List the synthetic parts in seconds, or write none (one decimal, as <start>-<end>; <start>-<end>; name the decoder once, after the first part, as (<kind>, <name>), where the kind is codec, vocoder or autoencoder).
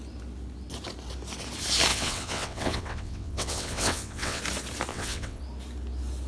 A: 1.9-4.4 (vocoder, WaveNeXt); 4.9-5.4